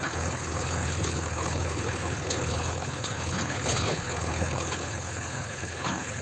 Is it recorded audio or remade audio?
remade